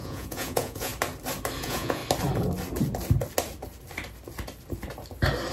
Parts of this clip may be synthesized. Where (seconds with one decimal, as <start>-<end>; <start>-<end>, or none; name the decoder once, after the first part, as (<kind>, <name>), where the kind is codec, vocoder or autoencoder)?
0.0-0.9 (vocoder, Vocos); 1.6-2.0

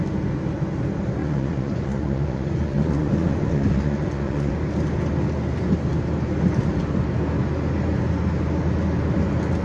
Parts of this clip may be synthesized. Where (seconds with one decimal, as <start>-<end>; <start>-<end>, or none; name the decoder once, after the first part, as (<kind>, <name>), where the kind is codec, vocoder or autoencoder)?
1.2-4.5 (vocoder, Vocos)

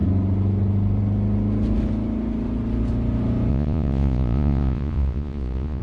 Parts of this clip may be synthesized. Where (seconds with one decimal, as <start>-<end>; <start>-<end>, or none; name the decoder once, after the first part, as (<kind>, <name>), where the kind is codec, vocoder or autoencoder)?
3.5-5.8 (vocoder, Vocos)

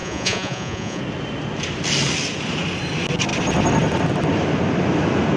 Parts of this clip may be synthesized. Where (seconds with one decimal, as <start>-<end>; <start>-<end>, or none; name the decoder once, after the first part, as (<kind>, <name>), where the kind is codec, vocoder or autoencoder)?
0.0-1.0 (vocoder, Vocos)

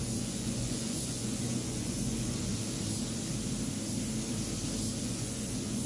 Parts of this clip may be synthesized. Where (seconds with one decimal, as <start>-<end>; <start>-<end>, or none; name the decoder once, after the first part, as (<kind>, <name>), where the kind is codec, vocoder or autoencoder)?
0.0-2.5 (vocoder, Vocos); 5.0-5.9

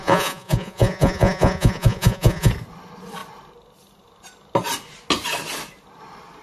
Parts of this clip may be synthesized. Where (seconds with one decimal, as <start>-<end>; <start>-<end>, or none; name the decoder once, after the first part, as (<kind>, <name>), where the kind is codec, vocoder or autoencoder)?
0.0-2.5 (vocoder, Vocos)